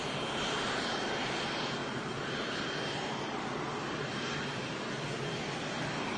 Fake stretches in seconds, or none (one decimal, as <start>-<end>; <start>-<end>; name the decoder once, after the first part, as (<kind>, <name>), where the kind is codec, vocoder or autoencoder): none

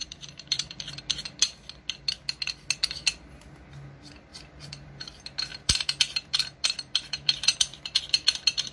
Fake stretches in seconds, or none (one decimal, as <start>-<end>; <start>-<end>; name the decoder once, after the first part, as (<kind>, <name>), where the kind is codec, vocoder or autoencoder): 0.0-1.0 (vocoder, BigVGAN v2); 4.3-5.0; 5.5-8.0

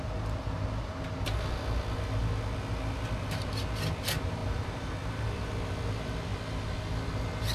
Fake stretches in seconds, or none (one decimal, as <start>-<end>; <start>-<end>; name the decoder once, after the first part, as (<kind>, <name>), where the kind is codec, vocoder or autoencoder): 4.4-4.9 (vocoder, BigVGAN v2)

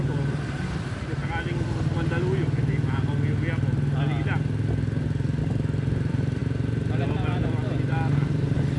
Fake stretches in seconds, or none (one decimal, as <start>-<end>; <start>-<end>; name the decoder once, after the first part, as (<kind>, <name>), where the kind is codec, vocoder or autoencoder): 0.0-1.2 (vocoder, BigVGAN v2); 5.4-6.4; 7.0-8.8

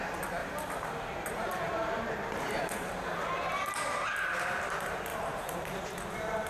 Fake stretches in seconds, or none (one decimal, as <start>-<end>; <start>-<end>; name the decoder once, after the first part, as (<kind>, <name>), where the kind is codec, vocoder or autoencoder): 0.4-2.9 (vocoder, BigVGAN v2); 5.1-5.8

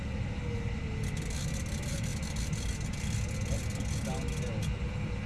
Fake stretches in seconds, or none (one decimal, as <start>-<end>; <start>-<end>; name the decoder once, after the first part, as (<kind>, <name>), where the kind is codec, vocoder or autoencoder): none